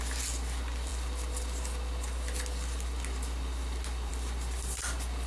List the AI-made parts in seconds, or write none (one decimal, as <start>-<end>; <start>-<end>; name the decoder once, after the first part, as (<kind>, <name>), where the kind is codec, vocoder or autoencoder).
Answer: none

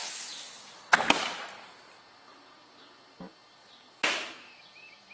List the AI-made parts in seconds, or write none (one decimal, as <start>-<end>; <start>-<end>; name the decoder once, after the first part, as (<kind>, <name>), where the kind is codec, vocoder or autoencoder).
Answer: none

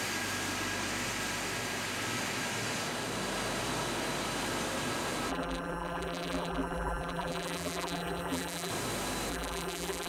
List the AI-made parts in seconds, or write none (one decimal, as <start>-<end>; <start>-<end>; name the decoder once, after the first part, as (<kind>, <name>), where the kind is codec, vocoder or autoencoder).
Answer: 5.3-8.7 (vocoder, BigVGAN v2); 9.3-10.1